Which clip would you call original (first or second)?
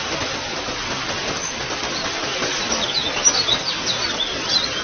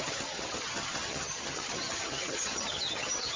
first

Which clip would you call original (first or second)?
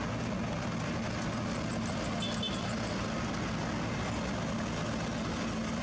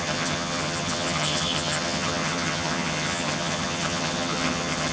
first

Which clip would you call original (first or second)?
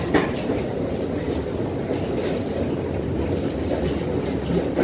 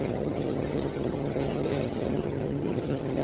first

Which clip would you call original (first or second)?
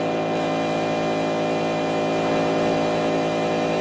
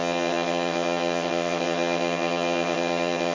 first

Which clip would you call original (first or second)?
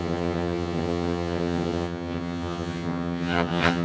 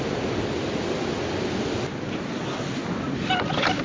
second